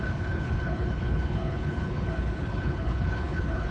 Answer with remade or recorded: remade